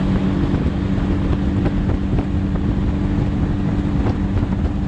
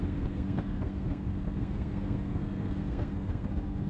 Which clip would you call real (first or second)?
first